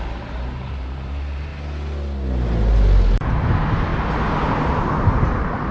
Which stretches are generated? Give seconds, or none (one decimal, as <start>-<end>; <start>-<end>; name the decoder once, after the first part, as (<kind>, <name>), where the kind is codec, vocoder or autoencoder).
0.0-1.5 (vocoder, BigVGAN v2); 3.4-3.9; 4.5-5.7